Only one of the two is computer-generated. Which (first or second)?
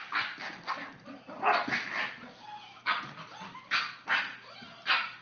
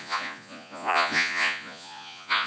second